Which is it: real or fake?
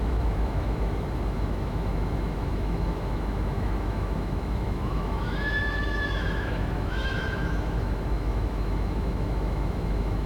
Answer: fake